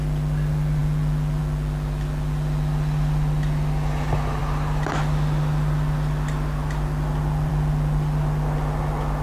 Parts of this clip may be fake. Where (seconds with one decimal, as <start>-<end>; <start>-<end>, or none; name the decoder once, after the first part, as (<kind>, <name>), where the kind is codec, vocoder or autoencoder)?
none